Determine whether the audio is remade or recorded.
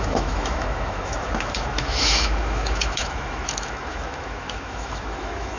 remade